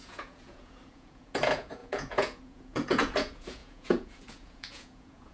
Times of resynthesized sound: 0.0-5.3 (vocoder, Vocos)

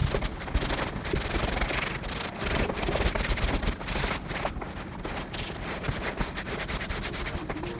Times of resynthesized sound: 0.0-4.7 (vocoder, BigVGAN v2)

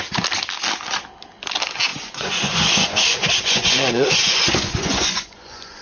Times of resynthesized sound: 1.9-5.8 (vocoder, Vocos)

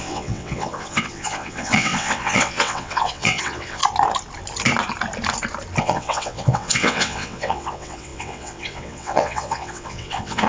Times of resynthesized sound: 0.0-3.8 (vocoder, WaveNeXt); 5.8-10.5

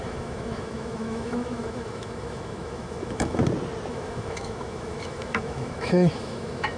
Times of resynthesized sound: 0.0-3.4 (autoencoder, DAC-VAE); 3.9-6.8